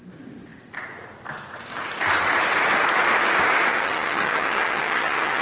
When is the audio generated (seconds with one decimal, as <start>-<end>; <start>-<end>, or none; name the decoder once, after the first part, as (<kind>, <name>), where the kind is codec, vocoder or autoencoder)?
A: 3.7-5.4 (vocoder, HiFi-GAN)